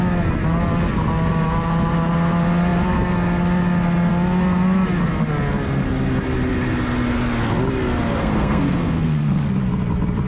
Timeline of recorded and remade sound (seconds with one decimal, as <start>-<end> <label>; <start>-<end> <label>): 0.0-8.2 recorded; 8.2-9.3 remade; 9.3-10.3 recorded